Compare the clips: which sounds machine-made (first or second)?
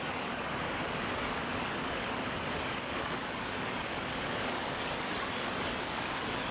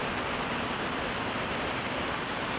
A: first